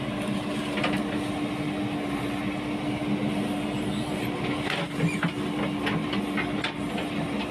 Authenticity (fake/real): real